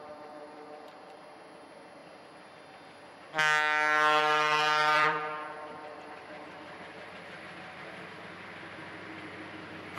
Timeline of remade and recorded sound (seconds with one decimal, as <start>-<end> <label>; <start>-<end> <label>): 0.0-2.0 remade; 2.0-4.2 recorded; 4.2-10.0 remade